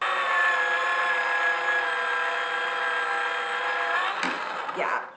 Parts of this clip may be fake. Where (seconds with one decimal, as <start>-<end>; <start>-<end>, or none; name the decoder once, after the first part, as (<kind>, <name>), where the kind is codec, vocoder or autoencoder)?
none